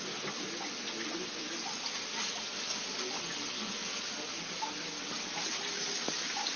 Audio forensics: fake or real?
real